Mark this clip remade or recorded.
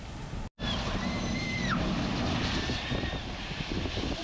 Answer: recorded